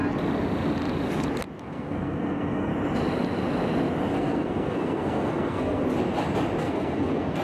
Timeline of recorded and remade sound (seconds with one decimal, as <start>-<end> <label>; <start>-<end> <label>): 0.0-1.6 recorded; 1.6-2.7 remade; 2.7-4.1 recorded; 4.1-5.8 remade; 5.8-6.6 recorded; 6.6-7.4 remade